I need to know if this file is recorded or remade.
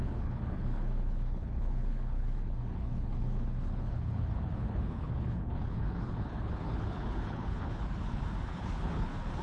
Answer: remade